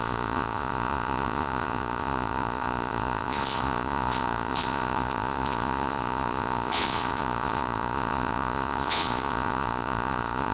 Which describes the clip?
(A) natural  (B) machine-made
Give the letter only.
B